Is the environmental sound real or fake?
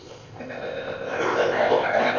fake